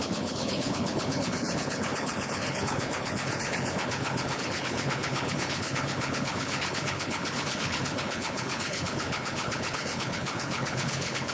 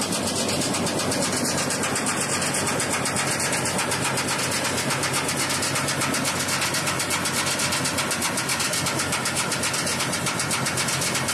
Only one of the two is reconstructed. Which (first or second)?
first